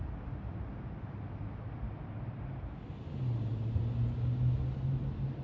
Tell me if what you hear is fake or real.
real